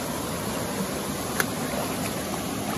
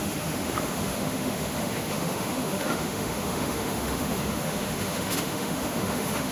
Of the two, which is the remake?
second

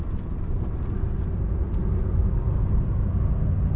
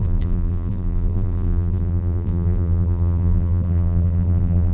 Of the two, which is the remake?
second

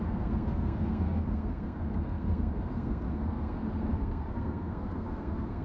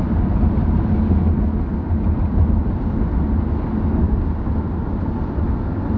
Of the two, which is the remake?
first